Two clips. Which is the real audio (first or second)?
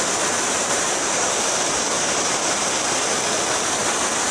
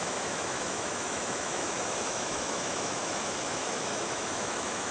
first